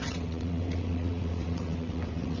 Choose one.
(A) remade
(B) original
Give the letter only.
A